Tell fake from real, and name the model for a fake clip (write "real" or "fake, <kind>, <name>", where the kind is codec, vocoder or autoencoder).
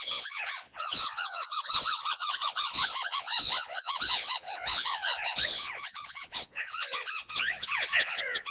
fake, vocoder, Vocos